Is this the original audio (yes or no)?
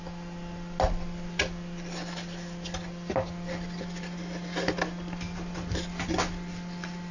yes